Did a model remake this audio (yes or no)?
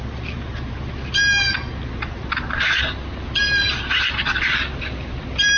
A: no